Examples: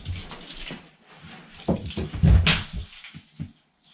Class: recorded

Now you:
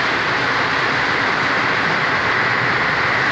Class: recorded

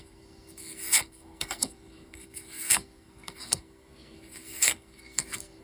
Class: remade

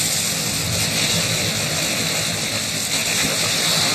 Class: recorded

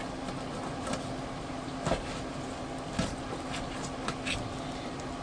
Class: recorded